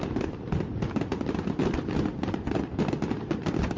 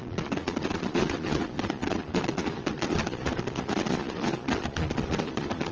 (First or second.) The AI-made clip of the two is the second